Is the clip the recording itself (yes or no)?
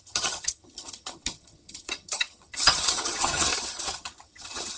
no